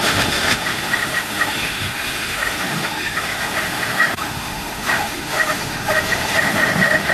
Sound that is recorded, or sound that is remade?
remade